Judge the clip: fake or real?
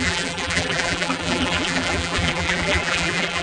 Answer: fake